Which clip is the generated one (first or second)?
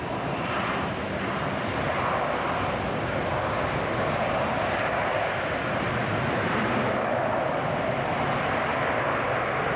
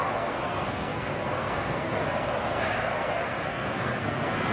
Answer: second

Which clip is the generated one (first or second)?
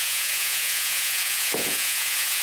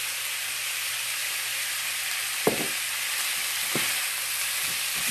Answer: first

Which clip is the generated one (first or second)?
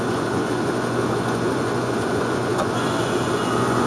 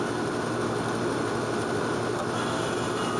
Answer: first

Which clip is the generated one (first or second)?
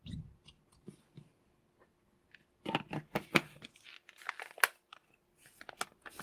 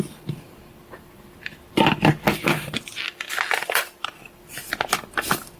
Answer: second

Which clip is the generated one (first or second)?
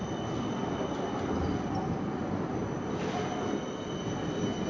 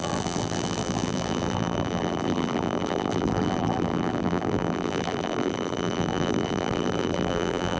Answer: second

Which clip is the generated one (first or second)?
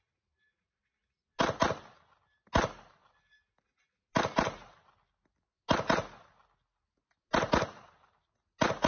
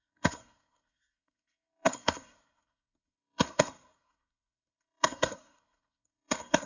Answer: second